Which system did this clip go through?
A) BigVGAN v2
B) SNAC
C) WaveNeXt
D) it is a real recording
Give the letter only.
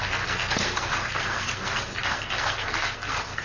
B